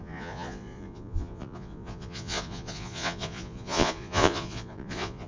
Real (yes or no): no